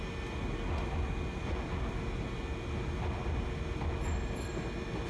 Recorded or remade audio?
recorded